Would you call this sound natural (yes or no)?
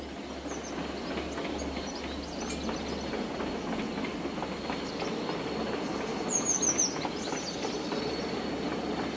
yes